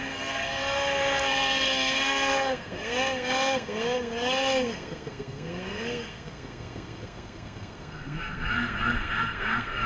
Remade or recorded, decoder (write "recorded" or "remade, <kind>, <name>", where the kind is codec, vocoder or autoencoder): remade, codec, SNAC